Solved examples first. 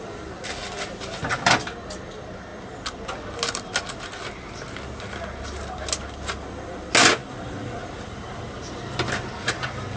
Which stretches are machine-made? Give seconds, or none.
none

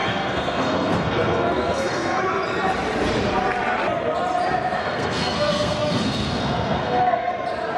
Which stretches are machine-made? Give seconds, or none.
0.0-2.2 (codec, SNAC); 4.8-7.3

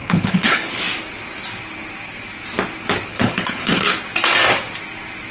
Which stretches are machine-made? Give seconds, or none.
0.0-0.8 (codec, HILCodec); 3.1-3.9

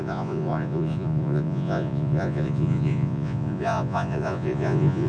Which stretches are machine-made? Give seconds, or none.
0.0-5.1 (vocoder, Vocos)